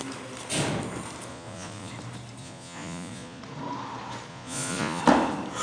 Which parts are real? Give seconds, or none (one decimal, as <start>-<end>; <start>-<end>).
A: 0.0-1.3; 1.9-2.4; 3.4-4.3; 5.0-5.6

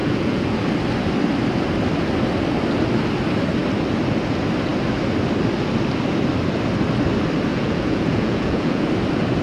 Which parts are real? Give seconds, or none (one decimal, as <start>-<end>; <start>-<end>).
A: 0.5-7.5; 8.9-9.4

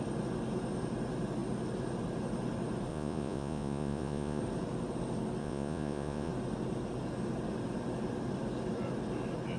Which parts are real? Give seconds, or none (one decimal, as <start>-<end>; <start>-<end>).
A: 0.0-2.9; 4.4-5.4; 6.3-9.6

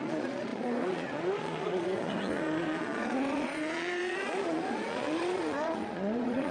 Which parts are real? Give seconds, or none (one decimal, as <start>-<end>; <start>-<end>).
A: none

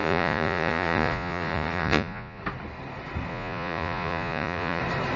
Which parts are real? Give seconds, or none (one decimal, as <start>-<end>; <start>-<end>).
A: 2.4-3.3; 4.8-5.2